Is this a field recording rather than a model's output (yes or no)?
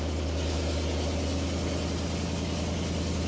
yes